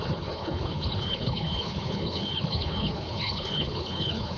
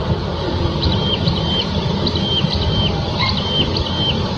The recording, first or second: second